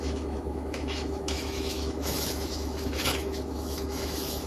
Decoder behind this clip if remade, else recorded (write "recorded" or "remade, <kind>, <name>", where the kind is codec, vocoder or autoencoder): remade, autoencoder, DAC-VAE